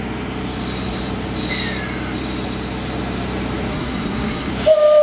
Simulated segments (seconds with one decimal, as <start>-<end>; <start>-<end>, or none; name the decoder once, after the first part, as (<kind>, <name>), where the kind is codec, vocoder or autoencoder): 3.7-4.5 (codec, SNAC)